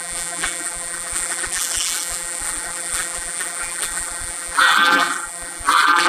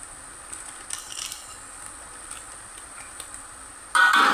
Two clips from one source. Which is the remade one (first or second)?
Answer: first